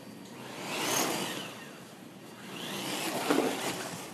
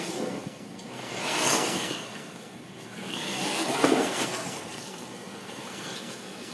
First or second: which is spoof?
second